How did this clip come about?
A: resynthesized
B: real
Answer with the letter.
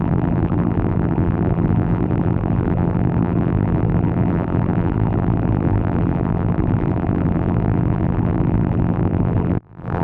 A